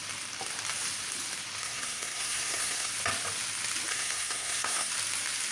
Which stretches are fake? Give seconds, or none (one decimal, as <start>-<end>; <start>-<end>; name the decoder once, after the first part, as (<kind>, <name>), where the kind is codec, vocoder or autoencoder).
1.6-2.9 (codec, SNAC); 3.9-4.9